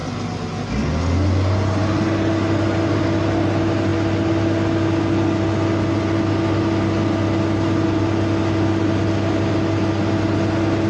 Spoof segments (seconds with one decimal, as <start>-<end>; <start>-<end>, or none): none